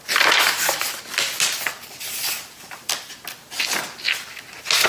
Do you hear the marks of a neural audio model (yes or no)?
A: no